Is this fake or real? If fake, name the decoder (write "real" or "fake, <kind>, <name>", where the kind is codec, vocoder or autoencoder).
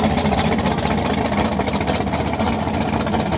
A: real